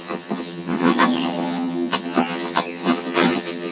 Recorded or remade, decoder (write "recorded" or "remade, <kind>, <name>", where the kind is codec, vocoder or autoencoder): remade, vocoder, HiFi-GAN